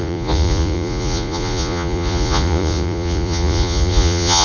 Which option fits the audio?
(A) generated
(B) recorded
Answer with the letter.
A